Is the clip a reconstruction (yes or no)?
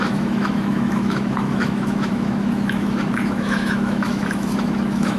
yes